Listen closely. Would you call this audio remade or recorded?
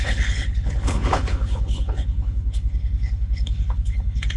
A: remade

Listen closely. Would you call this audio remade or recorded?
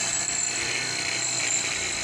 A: recorded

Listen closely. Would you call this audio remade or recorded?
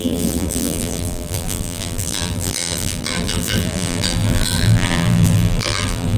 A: remade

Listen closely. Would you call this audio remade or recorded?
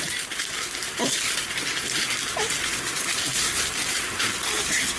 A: recorded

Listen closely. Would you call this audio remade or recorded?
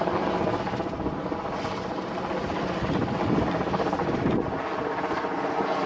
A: recorded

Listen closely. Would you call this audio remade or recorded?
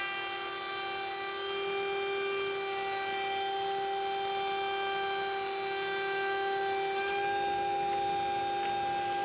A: recorded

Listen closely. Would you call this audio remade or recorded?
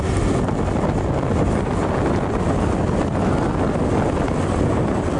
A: recorded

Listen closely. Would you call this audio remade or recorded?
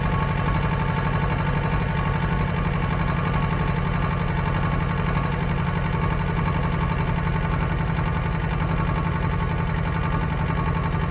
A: recorded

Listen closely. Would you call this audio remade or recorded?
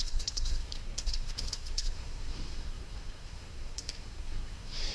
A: remade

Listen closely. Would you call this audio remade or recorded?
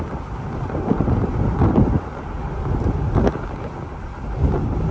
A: recorded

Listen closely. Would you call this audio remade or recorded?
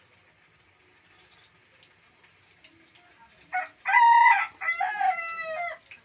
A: recorded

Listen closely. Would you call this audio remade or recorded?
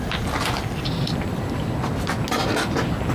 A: recorded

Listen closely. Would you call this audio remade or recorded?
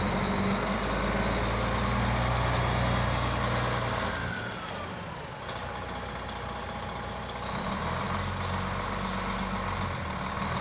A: recorded